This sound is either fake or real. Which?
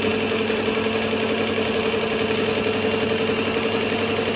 real